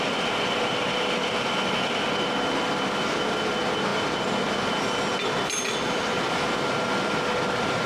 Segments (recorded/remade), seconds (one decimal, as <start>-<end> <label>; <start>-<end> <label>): 0.0-7.9 recorded